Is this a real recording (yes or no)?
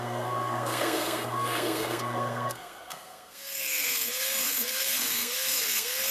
no